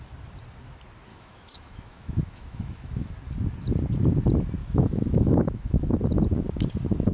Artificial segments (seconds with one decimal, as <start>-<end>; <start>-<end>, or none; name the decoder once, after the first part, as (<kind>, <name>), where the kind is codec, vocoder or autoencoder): 1.1-3.1 (autoencoder, DAC-VAE); 4.6-6.0